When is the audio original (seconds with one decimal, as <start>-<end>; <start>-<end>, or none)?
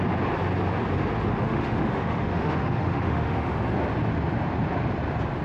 0.0-1.3; 3.6-5.4